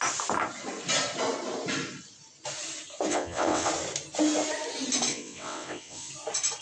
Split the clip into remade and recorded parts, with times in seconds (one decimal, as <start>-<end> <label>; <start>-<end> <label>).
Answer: 0.0-3.1 recorded; 3.1-3.7 remade; 3.7-5.1 recorded; 5.1-6.1 remade; 6.1-6.6 recorded